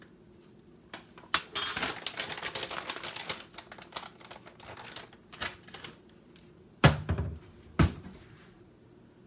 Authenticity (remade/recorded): recorded